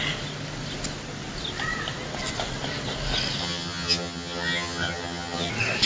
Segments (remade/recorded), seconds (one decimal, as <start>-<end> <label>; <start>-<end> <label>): 0.0-3.4 recorded; 3.4-5.5 remade; 5.5-5.9 recorded